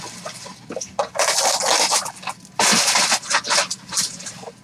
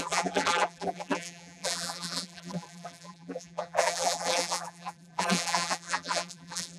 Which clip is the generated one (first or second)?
second